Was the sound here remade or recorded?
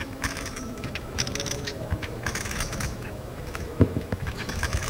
remade